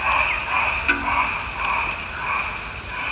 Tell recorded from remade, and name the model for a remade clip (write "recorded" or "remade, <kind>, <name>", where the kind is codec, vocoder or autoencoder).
recorded